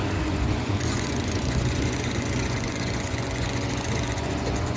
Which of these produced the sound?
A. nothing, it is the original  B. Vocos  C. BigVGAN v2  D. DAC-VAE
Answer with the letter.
B